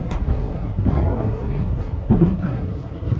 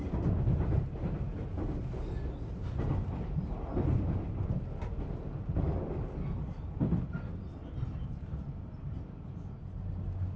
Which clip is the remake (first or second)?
first